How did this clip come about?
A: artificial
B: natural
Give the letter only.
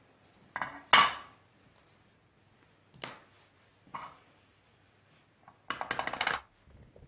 B